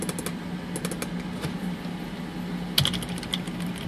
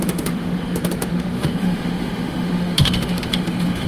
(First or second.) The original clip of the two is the first